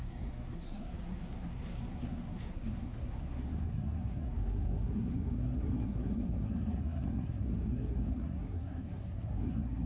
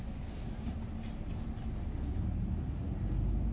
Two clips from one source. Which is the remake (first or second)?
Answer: first